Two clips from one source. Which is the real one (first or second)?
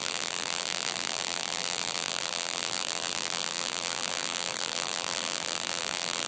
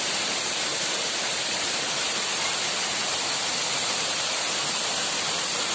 second